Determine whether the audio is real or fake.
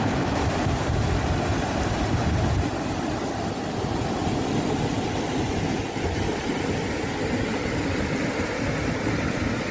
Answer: real